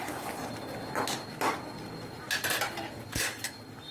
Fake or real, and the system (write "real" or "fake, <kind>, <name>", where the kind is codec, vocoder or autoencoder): real